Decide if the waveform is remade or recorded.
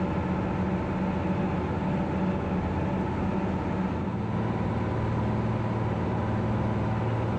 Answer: recorded